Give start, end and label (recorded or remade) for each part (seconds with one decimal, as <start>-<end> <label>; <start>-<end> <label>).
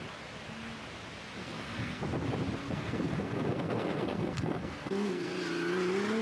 0.0-1.4 recorded; 1.4-2.0 remade; 2.0-2.6 recorded; 2.6-5.3 remade; 5.3-6.2 recorded